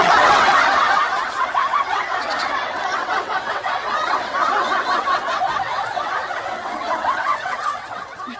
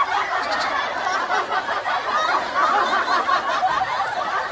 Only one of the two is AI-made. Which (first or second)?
first